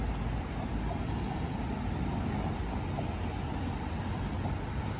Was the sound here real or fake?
real